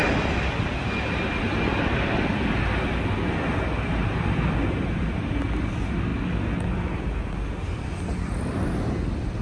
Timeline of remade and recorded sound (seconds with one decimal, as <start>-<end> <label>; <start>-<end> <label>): 0.0-0.6 remade; 0.6-9.4 recorded